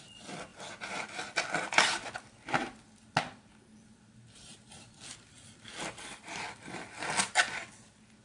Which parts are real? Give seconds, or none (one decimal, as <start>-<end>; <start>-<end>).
0.0-8.2